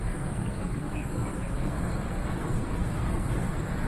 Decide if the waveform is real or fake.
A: fake